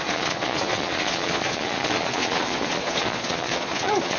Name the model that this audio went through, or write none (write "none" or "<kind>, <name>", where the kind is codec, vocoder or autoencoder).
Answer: vocoder, Vocos